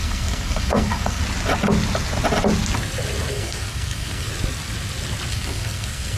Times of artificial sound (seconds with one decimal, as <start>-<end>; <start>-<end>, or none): 0.0-1.2; 3.3-4.3; 5.3-6.2

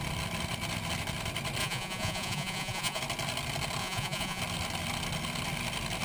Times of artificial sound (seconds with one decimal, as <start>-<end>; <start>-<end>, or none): 1.6-3.0; 3.8-4.4